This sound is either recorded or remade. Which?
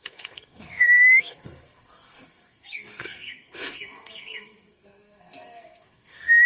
remade